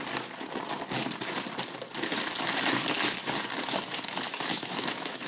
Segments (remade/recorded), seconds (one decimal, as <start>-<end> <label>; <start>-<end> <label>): 0.0-4.5 recorded; 4.5-5.3 remade